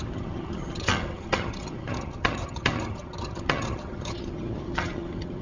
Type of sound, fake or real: fake